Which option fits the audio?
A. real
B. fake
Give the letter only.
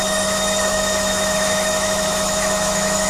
B